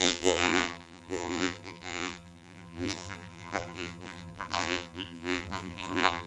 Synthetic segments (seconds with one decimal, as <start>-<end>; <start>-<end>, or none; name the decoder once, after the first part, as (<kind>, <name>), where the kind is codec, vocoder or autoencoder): 0.0-6.3 (vocoder, BigVGAN v2)